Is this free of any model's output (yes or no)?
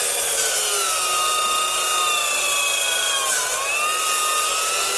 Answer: yes